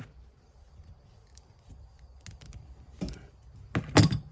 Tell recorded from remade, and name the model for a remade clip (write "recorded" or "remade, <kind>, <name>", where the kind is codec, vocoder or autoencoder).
recorded